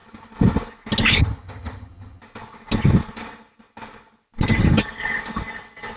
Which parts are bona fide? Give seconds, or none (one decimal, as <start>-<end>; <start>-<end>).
0.0-1.2; 2.2-6.0